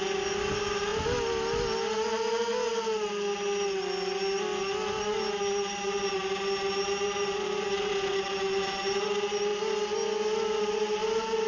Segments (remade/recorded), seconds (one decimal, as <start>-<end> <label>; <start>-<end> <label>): 0.0-0.9 remade; 0.9-5.4 recorded; 5.4-9.5 remade; 9.5-10.6 recorded; 10.6-11.5 remade